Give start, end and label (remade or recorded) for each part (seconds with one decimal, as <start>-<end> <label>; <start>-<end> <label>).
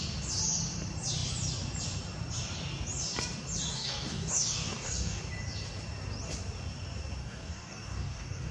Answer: 0.0-3.7 recorded; 3.7-5.2 remade; 5.2-7.2 recorded; 7.2-8.5 remade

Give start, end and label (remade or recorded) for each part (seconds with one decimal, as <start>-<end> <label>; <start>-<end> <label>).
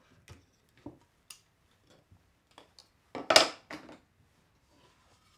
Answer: 0.0-5.4 recorded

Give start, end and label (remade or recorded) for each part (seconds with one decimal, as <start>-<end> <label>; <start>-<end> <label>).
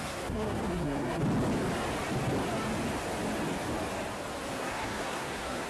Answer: 0.0-1.2 remade; 1.2-4.5 recorded; 4.5-5.7 remade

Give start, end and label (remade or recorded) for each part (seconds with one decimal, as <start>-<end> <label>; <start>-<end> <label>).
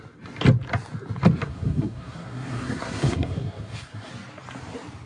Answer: 0.0-1.4 recorded; 1.4-4.1 remade; 4.1-5.1 recorded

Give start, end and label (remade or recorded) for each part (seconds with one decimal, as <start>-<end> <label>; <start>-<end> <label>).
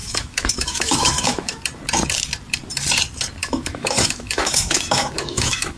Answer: 0.0-1.6 remade; 1.6-3.4 recorded; 3.4-5.8 remade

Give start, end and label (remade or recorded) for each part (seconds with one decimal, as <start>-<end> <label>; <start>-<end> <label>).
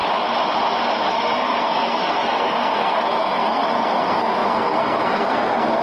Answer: 0.0-1.1 recorded; 1.1-5.8 remade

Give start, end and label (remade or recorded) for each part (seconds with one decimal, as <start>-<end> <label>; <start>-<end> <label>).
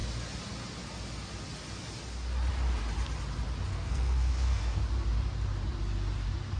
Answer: 0.0-3.7 recorded; 3.7-4.8 remade; 4.8-6.6 recorded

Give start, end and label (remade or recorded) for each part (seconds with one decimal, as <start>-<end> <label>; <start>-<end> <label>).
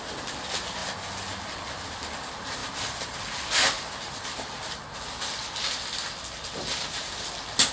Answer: 0.0-7.7 recorded